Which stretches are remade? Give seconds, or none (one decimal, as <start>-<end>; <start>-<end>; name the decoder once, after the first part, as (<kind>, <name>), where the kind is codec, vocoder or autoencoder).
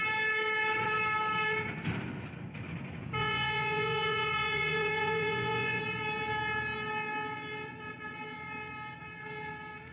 3.2-5.8 (vocoder, Vocos)